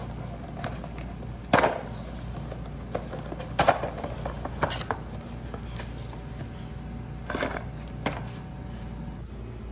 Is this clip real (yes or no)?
yes